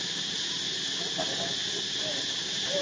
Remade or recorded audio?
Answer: recorded